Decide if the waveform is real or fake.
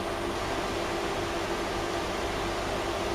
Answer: real